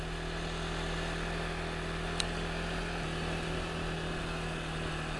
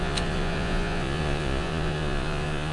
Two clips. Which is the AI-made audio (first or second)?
second